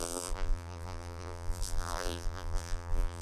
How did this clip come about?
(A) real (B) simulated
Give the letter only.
B